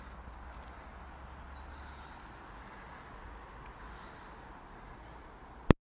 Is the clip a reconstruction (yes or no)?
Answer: no